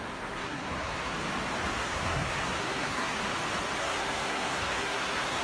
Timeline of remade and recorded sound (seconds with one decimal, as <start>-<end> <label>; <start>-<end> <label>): 0.0-1.1 remade; 1.1-1.8 recorded; 1.8-3.3 remade; 3.3-3.8 recorded; 3.8-5.4 remade

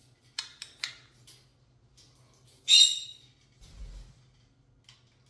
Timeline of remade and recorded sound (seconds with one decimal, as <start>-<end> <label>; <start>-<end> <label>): 0.0-5.3 recorded

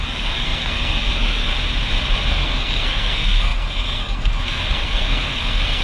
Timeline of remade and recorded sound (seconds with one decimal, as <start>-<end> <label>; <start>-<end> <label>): 0.0-1.5 remade; 1.5-2.3 recorded; 2.3-5.8 remade

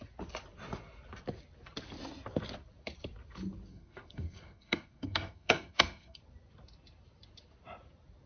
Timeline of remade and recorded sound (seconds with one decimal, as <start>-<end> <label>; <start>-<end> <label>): 0.0-3.7 recorded; 3.7-6.2 remade; 6.2-8.3 recorded

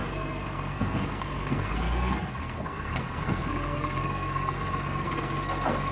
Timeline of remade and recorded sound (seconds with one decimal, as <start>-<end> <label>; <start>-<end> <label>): 0.0-5.9 remade

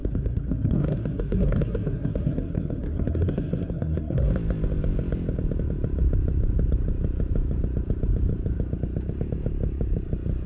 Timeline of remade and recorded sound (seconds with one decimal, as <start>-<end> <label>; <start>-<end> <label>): 0.0-4.3 remade; 4.3-10.5 recorded